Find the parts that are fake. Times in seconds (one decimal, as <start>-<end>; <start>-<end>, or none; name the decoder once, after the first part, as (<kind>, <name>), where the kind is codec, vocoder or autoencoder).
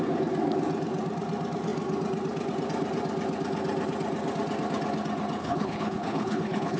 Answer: 5.4-6.8 (codec, HILCodec)